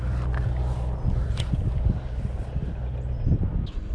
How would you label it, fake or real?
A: real